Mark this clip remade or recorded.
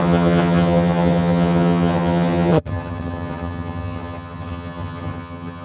remade